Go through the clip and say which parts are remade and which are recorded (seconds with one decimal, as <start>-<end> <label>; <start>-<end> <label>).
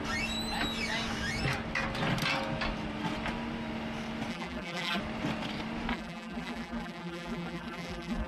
0.0-4.3 recorded; 4.3-5.0 remade; 5.0-5.9 recorded; 5.9-8.3 remade